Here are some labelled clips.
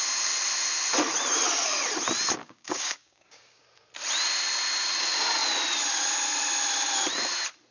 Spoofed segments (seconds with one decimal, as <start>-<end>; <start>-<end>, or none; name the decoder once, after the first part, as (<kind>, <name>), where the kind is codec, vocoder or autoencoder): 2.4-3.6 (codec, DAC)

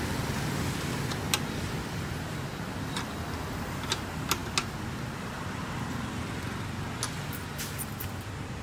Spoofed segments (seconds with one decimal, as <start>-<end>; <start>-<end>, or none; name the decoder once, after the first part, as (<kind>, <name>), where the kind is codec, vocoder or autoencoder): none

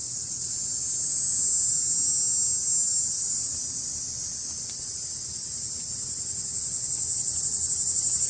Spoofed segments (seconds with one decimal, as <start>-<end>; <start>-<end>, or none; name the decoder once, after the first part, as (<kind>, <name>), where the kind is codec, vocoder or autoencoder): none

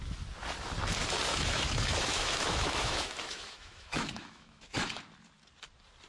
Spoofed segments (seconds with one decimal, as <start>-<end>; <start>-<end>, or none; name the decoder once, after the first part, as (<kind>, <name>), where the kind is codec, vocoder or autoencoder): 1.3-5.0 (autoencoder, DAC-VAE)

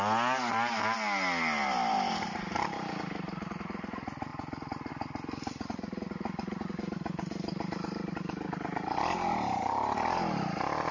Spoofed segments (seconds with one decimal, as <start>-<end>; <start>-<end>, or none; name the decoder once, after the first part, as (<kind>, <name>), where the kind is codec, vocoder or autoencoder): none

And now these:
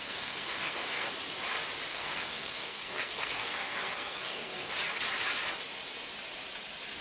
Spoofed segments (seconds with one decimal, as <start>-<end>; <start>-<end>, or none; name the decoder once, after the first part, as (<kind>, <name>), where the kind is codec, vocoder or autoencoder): 0.0-1.1 (codec, SNAC); 1.9-4.7

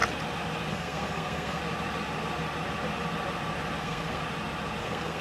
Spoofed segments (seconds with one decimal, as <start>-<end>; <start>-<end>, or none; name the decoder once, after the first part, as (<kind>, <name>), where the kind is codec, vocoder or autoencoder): 0.7-1.6 (codec, SNAC); 3.8-4.2; 4.8-5.2